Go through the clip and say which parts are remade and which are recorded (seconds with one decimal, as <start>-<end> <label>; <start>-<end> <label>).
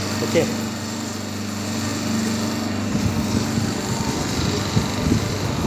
0.0-5.7 recorded